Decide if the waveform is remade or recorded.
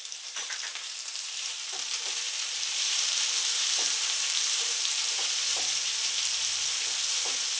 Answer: remade